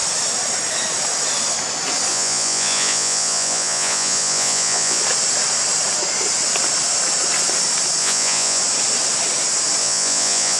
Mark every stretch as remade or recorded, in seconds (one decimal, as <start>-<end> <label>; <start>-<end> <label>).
0.0-2.1 recorded; 2.1-5.0 remade; 5.0-8.0 recorded; 8.0-8.6 remade; 8.6-9.8 recorded; 9.8-10.6 remade